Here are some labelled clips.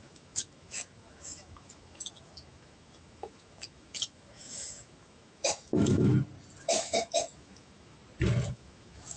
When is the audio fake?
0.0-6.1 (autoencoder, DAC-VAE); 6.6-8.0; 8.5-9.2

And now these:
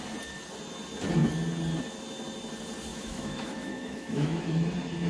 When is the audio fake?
2.9-4.4 (autoencoder, DAC-VAE)

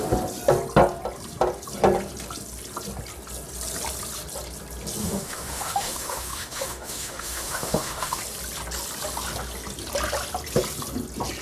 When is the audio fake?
5.0-8.2 (autoencoder, DAC-VAE)